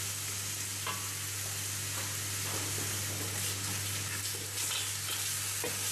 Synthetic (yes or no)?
no